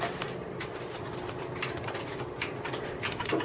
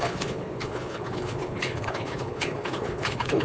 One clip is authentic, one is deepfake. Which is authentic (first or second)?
first